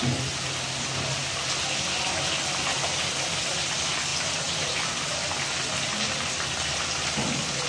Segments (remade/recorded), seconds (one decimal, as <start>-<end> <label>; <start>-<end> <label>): 0.0-7.7 recorded